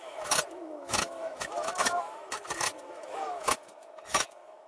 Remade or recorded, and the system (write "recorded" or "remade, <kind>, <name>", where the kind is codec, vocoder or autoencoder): remade, autoencoder, DAC-VAE